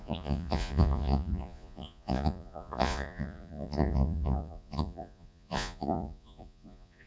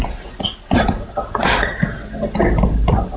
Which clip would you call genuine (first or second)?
second